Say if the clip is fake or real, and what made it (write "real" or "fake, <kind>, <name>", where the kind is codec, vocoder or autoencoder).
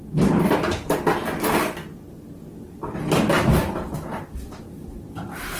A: real